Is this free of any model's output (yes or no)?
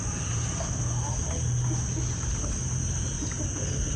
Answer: yes